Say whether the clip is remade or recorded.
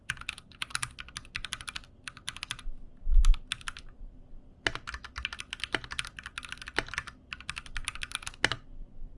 recorded